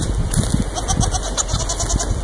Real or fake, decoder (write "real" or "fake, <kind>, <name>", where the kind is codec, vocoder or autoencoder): real